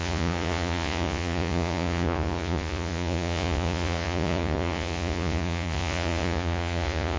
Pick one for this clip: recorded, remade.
remade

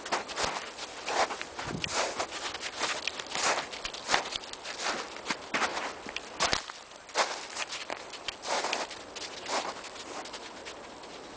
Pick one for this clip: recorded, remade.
recorded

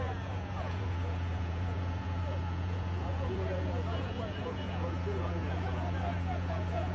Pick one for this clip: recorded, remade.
remade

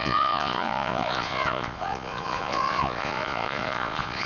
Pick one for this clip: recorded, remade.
remade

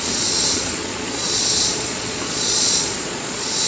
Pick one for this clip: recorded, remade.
remade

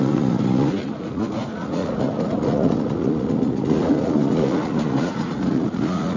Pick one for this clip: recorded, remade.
remade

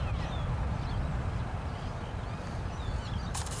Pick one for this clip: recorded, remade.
recorded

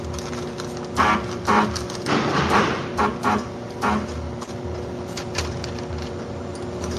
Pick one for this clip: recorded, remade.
recorded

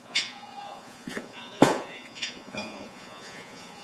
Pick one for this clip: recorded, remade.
remade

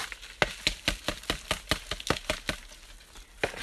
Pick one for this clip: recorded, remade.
recorded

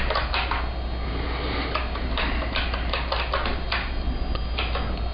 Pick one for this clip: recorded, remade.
recorded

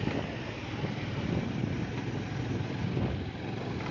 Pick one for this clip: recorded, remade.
recorded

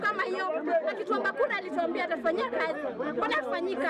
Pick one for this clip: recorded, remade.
recorded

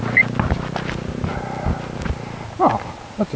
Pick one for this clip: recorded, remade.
recorded